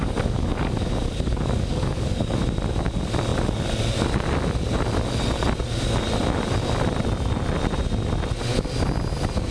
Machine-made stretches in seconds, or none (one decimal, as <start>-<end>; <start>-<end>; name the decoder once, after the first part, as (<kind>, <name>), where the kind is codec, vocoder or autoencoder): 0.0-2.4 (codec, DAC)